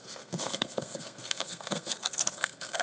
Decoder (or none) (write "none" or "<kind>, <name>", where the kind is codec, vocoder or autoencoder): codec, SNAC